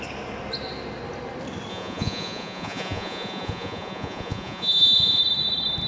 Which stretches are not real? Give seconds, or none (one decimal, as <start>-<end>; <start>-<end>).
1.7-5.2